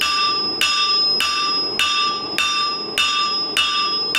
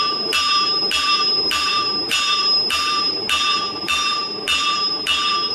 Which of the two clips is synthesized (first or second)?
second